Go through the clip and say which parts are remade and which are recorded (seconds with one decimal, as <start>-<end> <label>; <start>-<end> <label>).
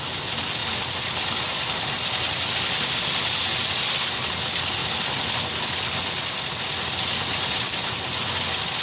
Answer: 0.0-8.8 recorded